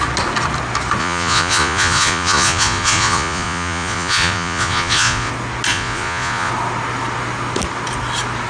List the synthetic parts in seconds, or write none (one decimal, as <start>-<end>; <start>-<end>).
1.0-5.3; 5.7-6.5